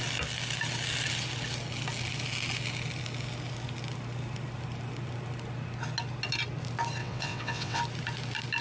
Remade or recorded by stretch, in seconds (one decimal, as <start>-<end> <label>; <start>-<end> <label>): 0.0-7.0 recorded; 7.0-7.8 remade; 7.8-8.6 recorded